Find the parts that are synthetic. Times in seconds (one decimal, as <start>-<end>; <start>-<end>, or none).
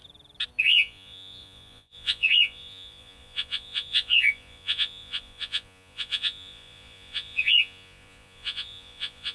0.6-9.3